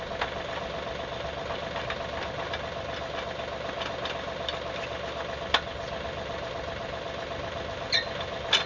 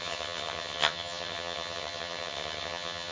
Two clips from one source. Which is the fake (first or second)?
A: second